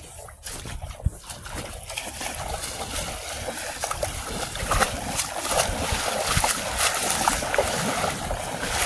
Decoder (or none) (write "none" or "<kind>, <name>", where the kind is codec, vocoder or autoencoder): vocoder, BigVGAN v2